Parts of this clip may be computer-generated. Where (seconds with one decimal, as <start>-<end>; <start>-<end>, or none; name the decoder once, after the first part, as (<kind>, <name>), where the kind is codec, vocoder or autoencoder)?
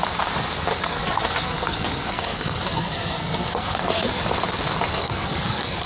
0.7-4.2 (codec, SNAC); 4.9-5.9